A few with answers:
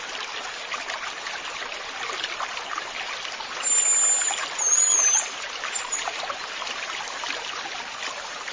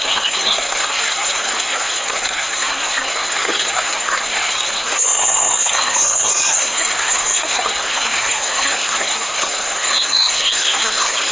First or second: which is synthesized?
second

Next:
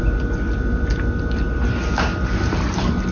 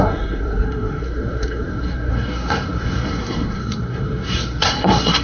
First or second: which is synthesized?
second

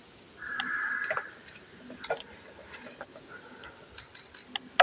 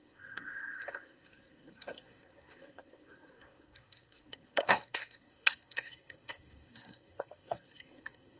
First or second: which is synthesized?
second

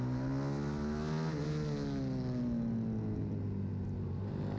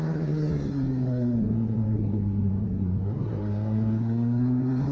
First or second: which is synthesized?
second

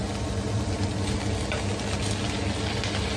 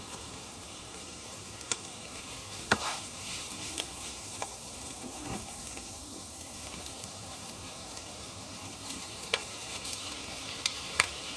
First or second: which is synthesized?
second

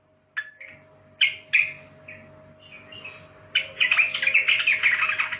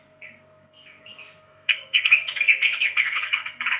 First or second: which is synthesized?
second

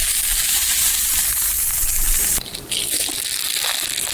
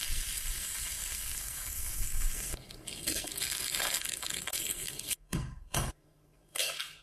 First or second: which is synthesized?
second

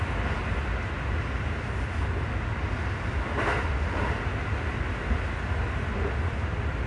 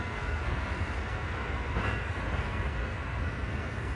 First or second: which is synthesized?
second